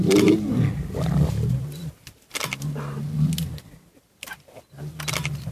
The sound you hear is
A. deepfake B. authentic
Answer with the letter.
B